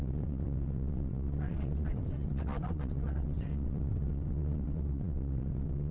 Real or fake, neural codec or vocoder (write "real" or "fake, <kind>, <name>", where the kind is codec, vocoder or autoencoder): fake, vocoder, WaveNeXt